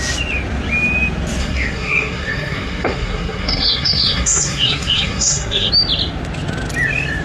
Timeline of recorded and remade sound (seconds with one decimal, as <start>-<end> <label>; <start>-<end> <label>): 0.0-1.4 recorded; 1.4-5.7 remade; 5.7-7.2 recorded